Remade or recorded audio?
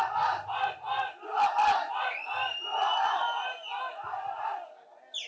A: recorded